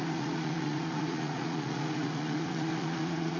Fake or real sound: fake